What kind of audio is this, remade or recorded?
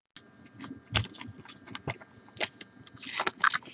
recorded